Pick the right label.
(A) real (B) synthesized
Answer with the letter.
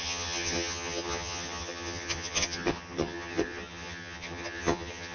B